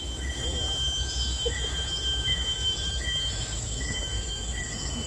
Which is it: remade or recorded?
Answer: remade